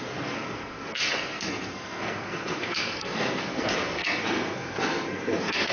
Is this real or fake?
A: fake